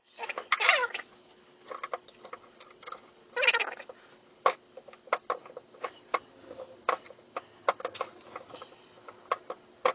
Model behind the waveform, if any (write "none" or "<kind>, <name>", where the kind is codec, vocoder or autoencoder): none